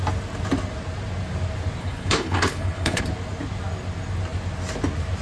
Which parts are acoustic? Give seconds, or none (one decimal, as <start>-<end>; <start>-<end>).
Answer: 0.0-1.8; 3.0-5.2